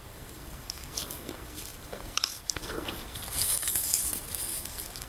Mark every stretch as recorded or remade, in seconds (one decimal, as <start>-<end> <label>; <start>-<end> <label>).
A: 0.0-5.1 remade